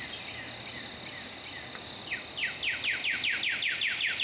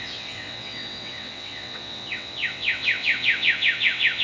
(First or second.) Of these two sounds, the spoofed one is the second